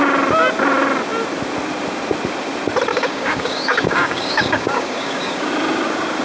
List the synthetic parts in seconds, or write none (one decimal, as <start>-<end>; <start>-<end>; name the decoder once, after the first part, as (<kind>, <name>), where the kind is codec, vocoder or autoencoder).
2.9-5.5 (codec, DAC)